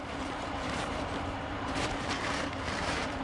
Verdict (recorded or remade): remade